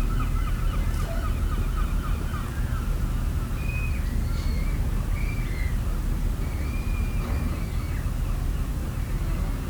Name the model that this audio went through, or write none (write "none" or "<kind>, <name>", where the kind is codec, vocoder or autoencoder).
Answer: none